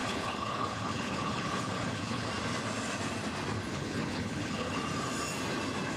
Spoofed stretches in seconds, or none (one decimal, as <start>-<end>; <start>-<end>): 0.0-2.3; 3.7-4.8